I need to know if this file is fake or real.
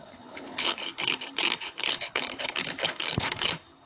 fake